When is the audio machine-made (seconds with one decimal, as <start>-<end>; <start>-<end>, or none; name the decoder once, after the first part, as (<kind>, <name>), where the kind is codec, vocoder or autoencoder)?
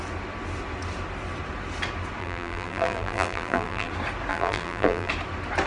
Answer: 2.2-3.9 (vocoder, BigVGAN v2); 4.3-5.1